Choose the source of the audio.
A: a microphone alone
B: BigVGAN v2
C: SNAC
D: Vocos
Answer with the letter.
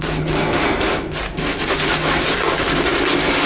A